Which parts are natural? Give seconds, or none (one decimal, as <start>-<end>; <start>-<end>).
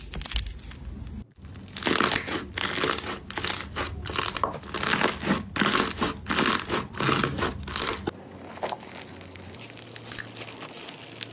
0.0-11.3